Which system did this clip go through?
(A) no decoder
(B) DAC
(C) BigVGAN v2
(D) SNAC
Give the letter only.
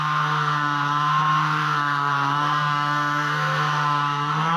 D